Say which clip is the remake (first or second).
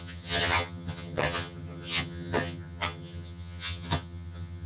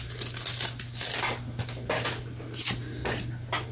first